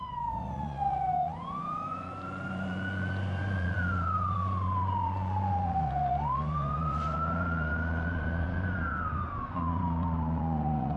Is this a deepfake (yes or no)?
yes